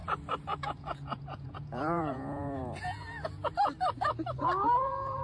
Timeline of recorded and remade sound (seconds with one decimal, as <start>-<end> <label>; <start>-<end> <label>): 0.0-0.6 recorded; 0.6-3.4 remade; 3.4-4.8 recorded; 4.8-5.2 remade